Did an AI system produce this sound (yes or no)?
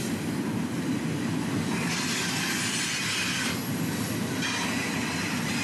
no